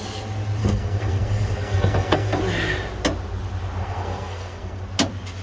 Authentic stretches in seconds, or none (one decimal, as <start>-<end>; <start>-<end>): 0.0-0.6; 2.4-3.8; 4.8-5.4